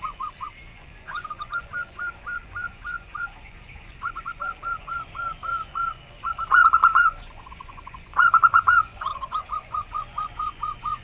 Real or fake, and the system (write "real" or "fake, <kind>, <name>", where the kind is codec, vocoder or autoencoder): fake, vocoder, Vocos